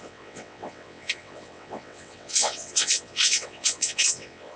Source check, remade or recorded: remade